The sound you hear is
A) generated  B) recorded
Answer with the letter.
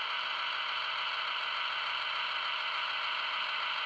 B